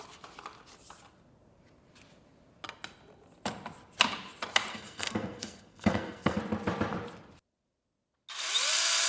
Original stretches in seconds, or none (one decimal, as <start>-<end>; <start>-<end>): 0.0-4.7; 6.4-9.1